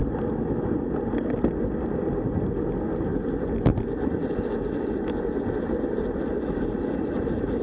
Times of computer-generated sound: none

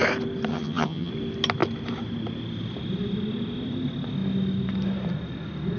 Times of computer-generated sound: 0.5-1.1 (vocoder, HiFi-GAN)

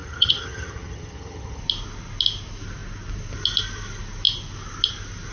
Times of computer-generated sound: 0.0-1.6 (vocoder, HiFi-GAN)

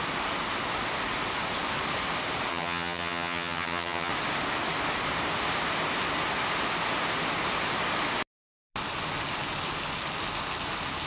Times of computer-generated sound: 2.5-4.1 (vocoder, HiFi-GAN)

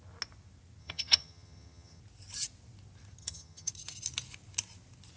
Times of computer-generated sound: 0.8-2.0 (vocoder, HiFi-GAN); 3.2-3.7

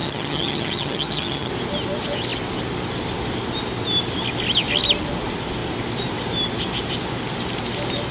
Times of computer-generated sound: 0.0-1.5 (vocoder, HiFi-GAN)

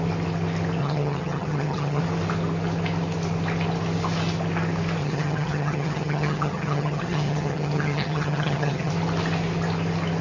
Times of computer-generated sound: 0.8-2.0 (vocoder, HiFi-GAN); 5.0-8.9